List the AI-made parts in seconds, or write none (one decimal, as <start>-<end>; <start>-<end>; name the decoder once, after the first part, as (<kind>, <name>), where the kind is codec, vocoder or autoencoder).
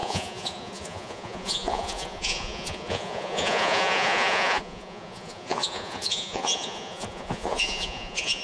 0.0-8.4 (vocoder, Vocos)